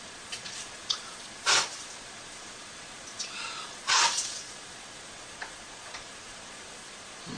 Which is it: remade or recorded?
remade